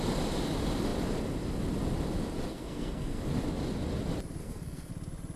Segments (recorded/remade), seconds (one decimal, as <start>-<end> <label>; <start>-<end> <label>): 0.0-2.5 recorded; 2.5-3.2 remade; 3.2-4.4 recorded; 4.4-4.9 remade; 4.9-5.4 recorded